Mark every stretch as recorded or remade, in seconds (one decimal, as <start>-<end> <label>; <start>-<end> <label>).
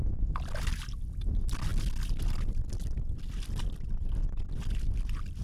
0.0-5.4 remade